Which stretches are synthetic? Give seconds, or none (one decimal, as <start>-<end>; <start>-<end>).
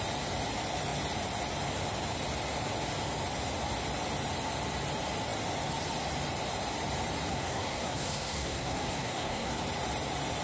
7.3-9.6